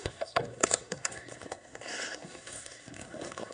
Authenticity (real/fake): fake